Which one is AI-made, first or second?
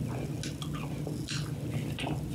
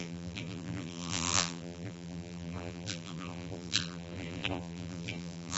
second